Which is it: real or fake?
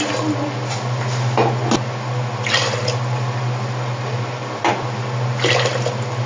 real